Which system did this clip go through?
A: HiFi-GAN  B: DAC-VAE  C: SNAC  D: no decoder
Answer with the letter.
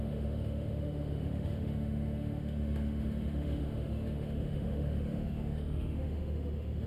B